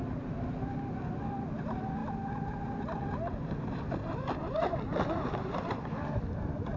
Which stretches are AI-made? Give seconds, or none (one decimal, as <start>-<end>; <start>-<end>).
4.4-6.0